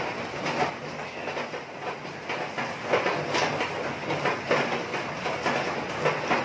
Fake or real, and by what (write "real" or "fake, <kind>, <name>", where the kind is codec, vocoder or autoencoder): real